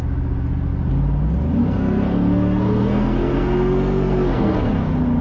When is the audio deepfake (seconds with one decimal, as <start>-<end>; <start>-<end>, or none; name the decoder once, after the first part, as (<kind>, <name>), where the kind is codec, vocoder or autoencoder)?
1.6-4.7 (codec, SNAC)